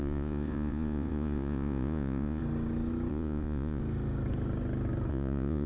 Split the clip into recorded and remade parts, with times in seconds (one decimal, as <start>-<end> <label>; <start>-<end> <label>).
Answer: 0.0-2.4 remade; 2.4-3.1 recorded; 3.1-3.8 remade; 3.8-5.1 recorded; 5.1-5.7 remade